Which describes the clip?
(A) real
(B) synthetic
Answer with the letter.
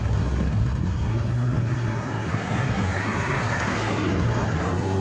B